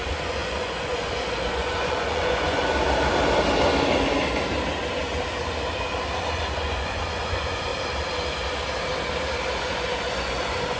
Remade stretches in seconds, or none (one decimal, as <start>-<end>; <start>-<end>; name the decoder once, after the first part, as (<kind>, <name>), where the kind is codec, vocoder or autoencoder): 0.0-2.6 (vocoder, Vocos); 6.2-7.7; 9.6-10.8